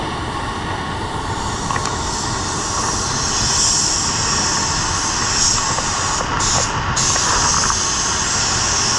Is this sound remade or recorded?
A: recorded